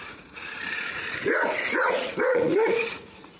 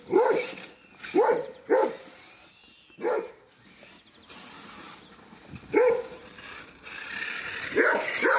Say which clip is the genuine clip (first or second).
second